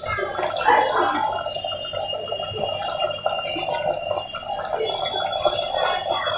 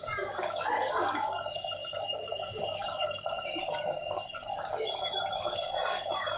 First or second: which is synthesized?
second